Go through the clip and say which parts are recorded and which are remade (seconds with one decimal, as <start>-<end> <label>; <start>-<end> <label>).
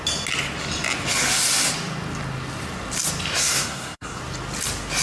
0.0-3.4 recorded; 3.4-4.2 remade; 4.2-5.0 recorded